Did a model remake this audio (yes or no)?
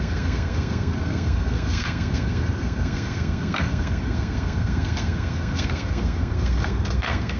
yes